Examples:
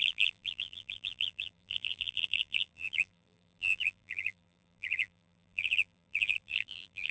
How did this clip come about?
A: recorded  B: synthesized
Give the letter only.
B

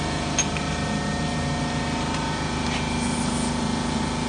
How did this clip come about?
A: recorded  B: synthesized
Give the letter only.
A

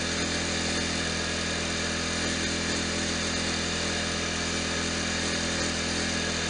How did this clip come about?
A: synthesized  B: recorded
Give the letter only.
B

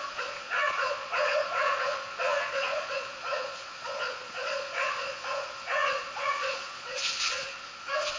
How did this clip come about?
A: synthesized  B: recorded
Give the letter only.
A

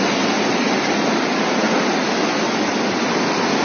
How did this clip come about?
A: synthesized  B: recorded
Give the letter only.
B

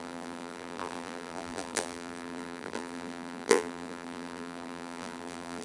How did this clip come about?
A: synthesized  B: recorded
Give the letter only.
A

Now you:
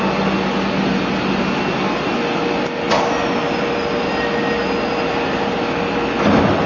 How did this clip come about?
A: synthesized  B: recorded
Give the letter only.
B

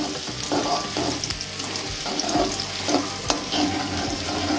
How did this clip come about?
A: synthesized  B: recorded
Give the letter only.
B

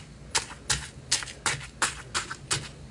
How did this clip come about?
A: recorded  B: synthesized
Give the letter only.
A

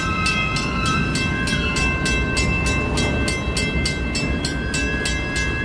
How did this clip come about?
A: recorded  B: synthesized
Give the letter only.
A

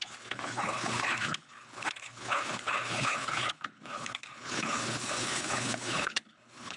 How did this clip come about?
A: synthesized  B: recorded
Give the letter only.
A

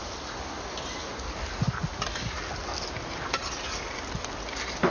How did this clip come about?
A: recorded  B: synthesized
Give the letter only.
A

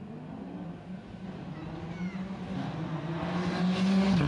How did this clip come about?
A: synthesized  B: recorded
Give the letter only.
B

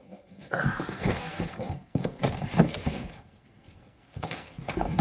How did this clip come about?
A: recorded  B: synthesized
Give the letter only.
B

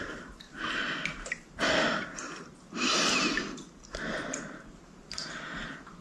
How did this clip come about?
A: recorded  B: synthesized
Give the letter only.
A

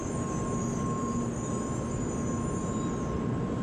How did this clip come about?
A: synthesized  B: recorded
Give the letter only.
B